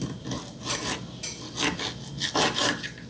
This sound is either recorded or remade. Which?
recorded